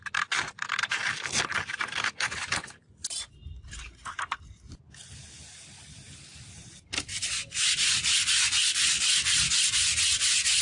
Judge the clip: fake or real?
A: real